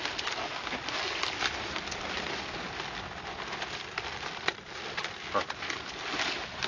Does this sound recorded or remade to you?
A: recorded